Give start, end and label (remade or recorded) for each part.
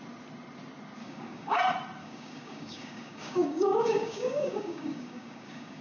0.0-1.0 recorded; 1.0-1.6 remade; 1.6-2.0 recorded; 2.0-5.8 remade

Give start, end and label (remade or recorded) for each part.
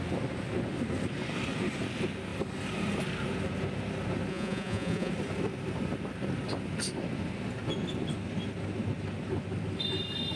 0.0-4.3 recorded; 4.3-5.1 remade; 5.1-10.4 recorded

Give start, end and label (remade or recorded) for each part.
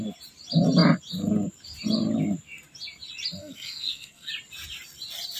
0.0-3.4 recorded; 3.4-4.3 remade; 4.3-5.4 recorded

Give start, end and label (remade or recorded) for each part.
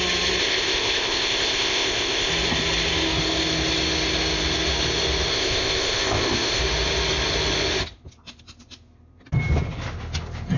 0.0-0.4 recorded; 0.4-2.3 remade; 2.3-5.3 recorded; 5.3-6.6 remade; 6.6-10.6 recorded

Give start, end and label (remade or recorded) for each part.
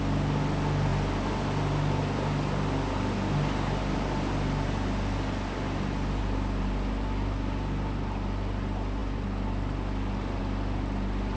0.0-11.4 recorded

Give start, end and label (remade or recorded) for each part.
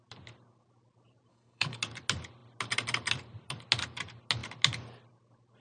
0.0-1.3 recorded; 1.3-1.8 remade; 1.8-5.6 recorded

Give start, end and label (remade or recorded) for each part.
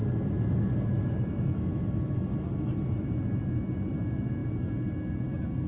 0.0-5.7 recorded